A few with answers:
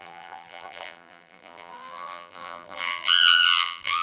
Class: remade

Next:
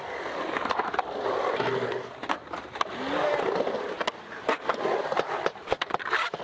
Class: remade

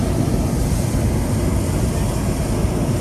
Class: recorded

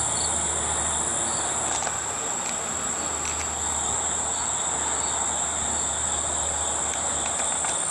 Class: recorded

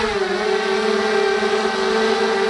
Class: recorded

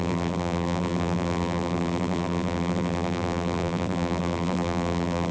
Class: remade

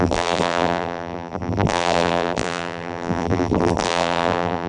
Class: remade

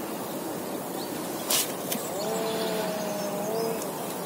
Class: recorded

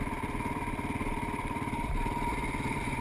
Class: remade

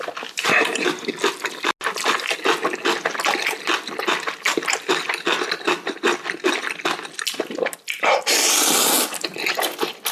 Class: recorded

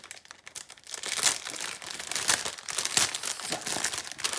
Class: recorded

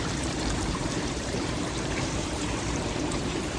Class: remade